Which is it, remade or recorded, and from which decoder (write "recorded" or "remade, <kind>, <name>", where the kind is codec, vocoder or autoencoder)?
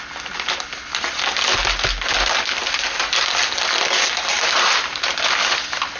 recorded